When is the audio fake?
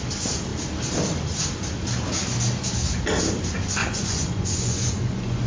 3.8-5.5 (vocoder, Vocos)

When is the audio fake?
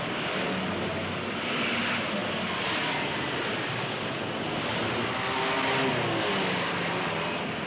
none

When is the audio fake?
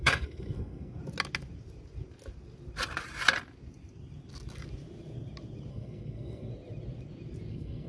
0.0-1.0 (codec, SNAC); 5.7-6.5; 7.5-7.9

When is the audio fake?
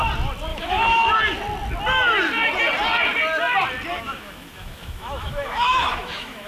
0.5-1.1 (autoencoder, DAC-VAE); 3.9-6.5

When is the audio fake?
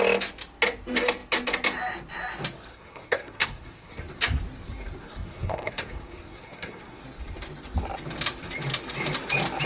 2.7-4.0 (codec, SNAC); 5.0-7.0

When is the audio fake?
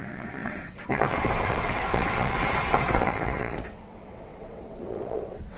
0.0-5.6 (vocoder, WaveNeXt)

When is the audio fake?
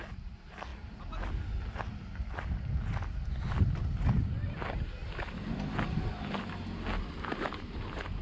none